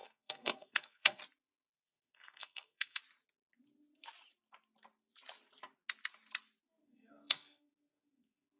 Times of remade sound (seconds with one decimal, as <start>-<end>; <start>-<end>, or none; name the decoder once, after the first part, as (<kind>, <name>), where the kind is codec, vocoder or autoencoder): 0.0-1.2 (codec, SNAC); 1.7-3.0; 6.8-8.6